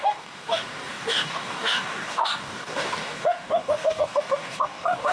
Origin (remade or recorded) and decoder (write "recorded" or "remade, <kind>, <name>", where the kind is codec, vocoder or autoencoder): remade, codec, DAC